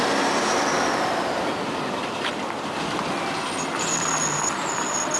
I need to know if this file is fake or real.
real